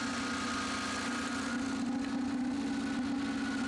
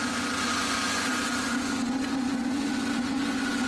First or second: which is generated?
second